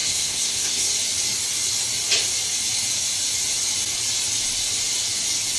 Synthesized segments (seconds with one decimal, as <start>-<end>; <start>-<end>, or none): 0.0-0.9